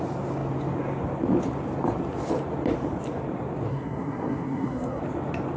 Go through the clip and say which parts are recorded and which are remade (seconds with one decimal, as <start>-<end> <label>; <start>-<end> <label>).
0.0-3.7 recorded; 3.7-5.0 remade; 5.0-5.6 recorded